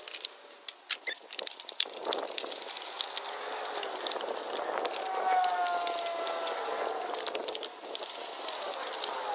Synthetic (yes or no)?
no